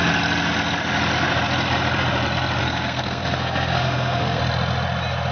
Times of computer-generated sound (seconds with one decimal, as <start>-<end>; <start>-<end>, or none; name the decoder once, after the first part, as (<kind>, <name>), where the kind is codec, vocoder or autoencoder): 2.6-4.4 (codec, SNAC)